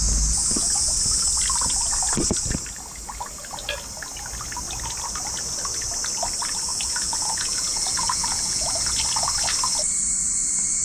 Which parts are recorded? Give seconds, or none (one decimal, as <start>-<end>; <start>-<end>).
0.0-6.7; 9.0-10.8